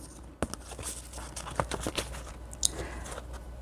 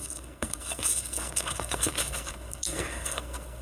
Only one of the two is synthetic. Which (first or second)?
second